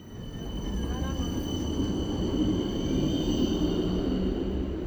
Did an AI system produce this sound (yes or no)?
no